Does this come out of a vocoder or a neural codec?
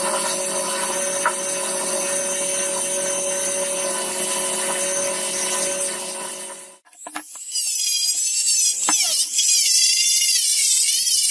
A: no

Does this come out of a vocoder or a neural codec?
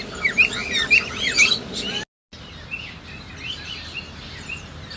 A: no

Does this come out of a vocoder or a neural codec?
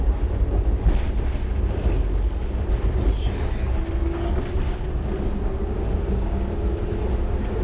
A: no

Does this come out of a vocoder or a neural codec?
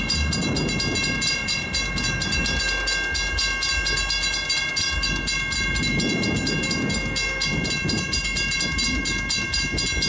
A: no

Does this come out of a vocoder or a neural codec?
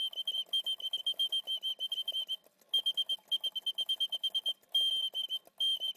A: no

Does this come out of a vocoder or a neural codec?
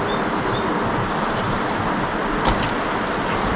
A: no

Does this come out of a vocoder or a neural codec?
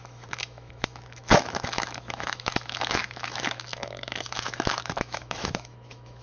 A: yes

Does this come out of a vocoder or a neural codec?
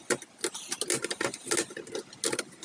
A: no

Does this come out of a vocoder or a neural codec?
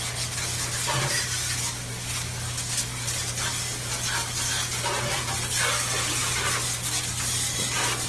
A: no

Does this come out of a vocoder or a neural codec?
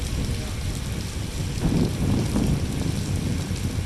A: yes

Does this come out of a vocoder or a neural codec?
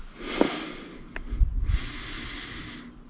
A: no